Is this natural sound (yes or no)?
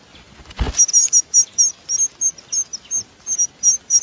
yes